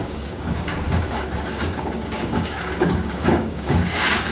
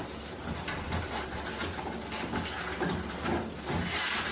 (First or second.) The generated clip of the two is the first